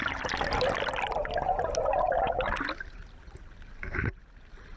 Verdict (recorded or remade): recorded